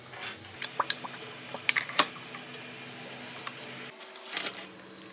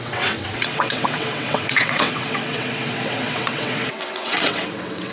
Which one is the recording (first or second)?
first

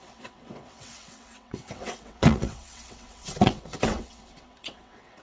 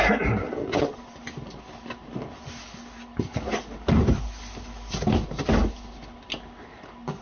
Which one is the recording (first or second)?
second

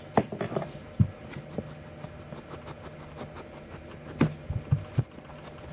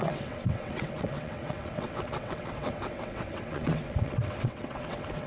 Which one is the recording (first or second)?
first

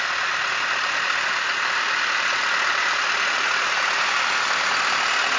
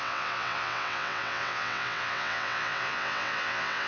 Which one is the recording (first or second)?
first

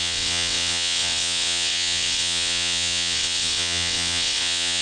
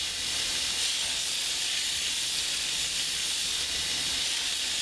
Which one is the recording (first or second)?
second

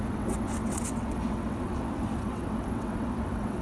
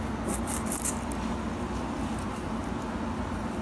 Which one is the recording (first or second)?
second